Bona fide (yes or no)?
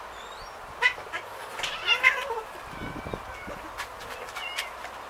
yes